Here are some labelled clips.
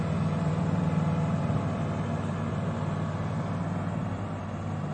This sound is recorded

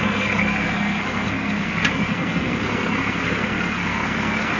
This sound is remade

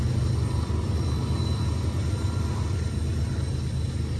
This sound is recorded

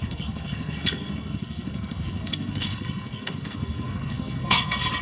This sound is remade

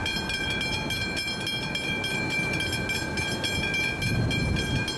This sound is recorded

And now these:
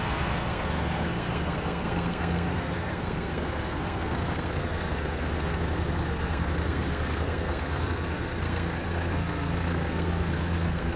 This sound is remade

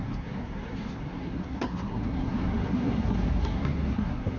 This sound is remade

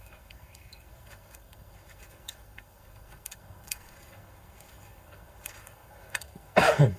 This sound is remade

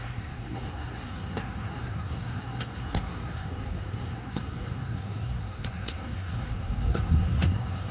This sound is remade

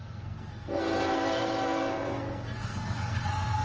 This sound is remade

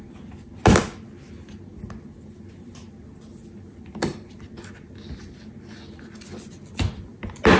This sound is recorded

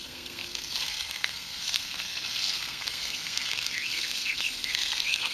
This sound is remade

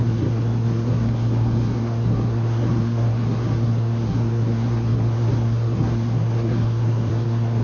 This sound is remade